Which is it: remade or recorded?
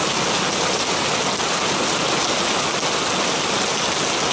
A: recorded